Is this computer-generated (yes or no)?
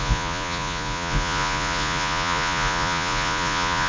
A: yes